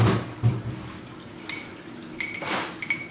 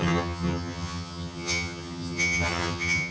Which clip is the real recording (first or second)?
first